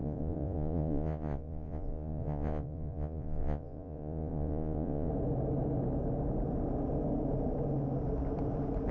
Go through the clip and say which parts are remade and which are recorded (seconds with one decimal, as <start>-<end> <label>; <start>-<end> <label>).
0.0-5.1 remade; 5.1-8.9 recorded